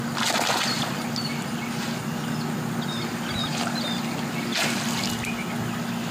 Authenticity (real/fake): real